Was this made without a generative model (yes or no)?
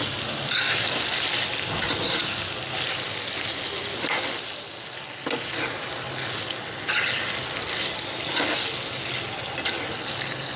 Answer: yes